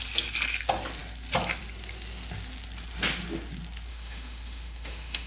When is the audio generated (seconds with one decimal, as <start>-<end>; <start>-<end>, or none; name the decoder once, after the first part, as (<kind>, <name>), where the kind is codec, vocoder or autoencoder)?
3.9-5.3 (autoencoder, DAC-VAE)